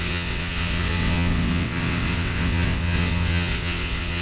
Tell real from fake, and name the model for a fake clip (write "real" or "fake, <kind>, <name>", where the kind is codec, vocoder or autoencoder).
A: fake, vocoder, WaveNeXt